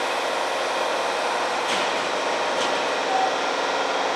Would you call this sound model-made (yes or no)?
no